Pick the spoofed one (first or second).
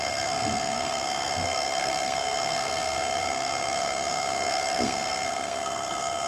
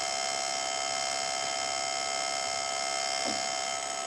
first